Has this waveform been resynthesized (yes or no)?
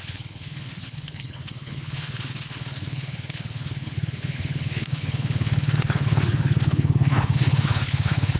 yes